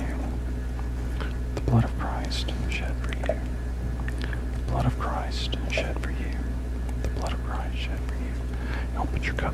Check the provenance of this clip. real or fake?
real